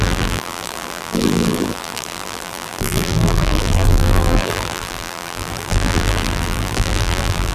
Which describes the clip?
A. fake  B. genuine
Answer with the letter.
A